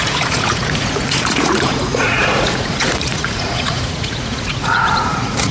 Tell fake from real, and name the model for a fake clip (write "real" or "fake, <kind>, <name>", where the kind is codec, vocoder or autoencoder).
fake, vocoder, Vocos